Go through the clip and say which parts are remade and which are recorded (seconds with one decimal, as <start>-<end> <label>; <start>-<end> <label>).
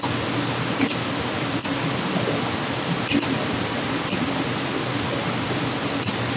0.0-1.6 recorded; 1.6-4.9 remade; 4.9-6.4 recorded